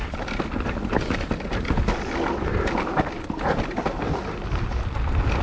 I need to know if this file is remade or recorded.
recorded